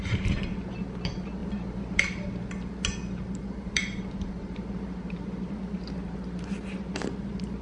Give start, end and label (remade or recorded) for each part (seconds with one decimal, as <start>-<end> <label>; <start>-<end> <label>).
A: 0.0-3.0 recorded; 3.0-7.6 remade